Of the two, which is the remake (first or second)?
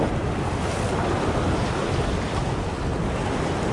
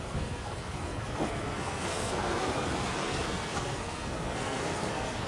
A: second